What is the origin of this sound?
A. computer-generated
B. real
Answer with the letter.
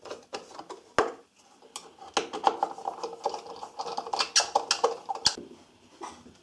B